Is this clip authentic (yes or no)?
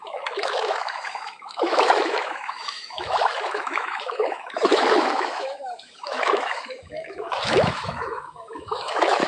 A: no